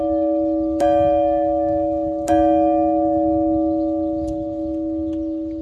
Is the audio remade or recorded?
recorded